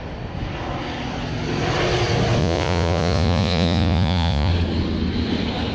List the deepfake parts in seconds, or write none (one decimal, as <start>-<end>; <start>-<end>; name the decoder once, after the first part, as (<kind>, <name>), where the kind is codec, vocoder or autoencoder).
2.4-4.5 (vocoder, Vocos)